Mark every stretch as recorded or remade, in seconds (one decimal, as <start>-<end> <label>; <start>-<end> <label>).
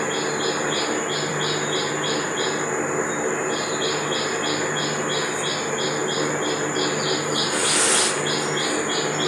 0.0-9.3 recorded